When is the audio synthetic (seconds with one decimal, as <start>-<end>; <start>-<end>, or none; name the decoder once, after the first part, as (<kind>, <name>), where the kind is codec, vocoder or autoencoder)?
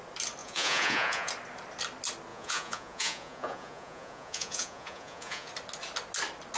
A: 0.4-1.3 (vocoder, Vocos); 2.3-5.5